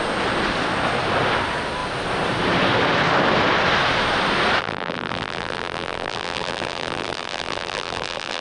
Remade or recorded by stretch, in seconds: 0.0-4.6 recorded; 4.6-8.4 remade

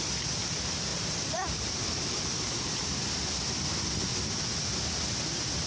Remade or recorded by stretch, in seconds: 0.0-0.9 recorded; 0.9-3.1 remade; 3.1-5.7 recorded

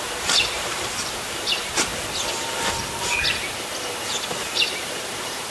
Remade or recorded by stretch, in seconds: 0.0-1.9 remade; 1.9-4.3 recorded; 4.3-5.5 remade

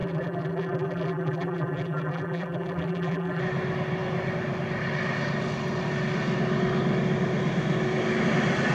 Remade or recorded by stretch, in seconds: 0.0-3.4 remade; 3.4-8.7 recorded

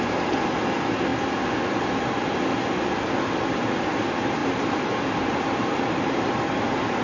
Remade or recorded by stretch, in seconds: 0.0-4.4 recorded; 4.4-6.3 remade; 6.3-7.0 recorded

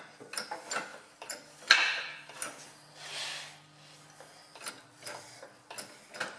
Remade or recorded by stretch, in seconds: 0.0-0.9 recorded; 0.9-4.7 remade; 4.7-6.4 recorded